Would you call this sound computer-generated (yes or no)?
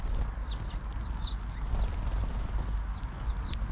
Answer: no